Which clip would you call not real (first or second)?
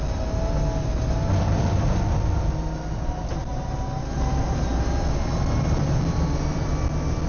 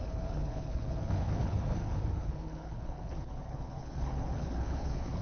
second